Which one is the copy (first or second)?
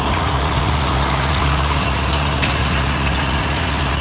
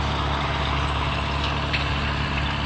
first